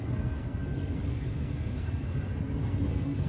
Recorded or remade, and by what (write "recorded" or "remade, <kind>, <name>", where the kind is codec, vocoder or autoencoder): remade, codec, SNAC